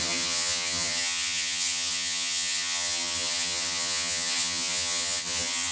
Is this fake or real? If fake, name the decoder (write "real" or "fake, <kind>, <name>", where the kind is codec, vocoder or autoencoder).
fake, vocoder, HiFi-GAN